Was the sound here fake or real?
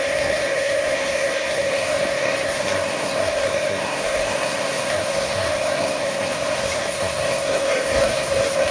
fake